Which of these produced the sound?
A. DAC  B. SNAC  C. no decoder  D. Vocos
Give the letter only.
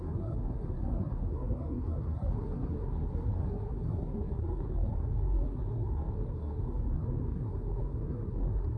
B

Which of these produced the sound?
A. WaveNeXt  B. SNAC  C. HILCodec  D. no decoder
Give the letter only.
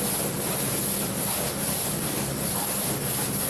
D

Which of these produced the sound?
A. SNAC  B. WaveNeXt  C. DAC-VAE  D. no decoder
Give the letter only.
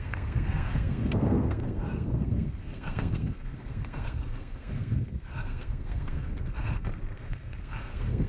A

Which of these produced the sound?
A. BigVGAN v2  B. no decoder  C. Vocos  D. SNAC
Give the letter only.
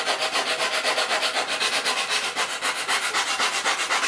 B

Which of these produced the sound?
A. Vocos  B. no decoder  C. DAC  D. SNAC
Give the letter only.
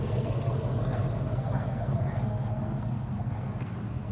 D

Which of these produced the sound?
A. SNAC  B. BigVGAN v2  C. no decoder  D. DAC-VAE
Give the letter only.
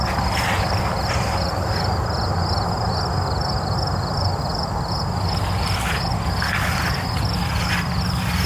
C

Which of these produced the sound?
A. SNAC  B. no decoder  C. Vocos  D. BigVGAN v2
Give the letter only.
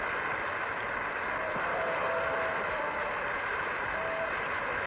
B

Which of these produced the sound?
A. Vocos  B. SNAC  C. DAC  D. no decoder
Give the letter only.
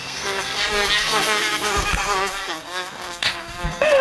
B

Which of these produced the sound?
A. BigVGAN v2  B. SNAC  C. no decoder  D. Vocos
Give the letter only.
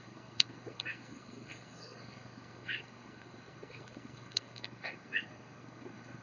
B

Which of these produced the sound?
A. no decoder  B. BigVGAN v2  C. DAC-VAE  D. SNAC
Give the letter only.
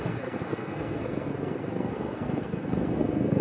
D